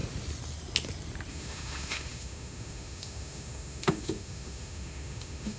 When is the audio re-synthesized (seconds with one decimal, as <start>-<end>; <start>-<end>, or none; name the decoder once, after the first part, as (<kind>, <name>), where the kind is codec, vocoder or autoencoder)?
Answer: 1.3-5.6 (autoencoder, DAC-VAE)